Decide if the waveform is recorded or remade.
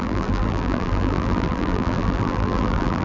remade